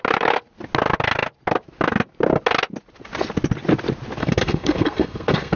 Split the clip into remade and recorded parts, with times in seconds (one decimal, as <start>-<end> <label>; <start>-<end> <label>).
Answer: 0.0-4.2 recorded; 4.2-5.6 remade